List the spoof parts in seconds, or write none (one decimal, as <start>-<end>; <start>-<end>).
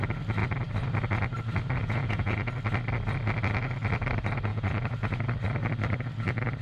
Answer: 1.8-2.5; 4.5-5.2